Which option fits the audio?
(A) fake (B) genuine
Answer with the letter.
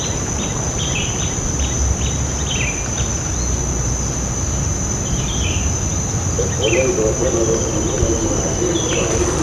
B